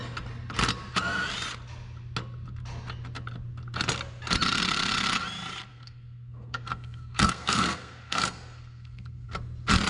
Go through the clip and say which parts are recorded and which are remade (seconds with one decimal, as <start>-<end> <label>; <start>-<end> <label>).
0.0-5.7 recorded; 5.7-9.3 remade; 9.3-9.9 recorded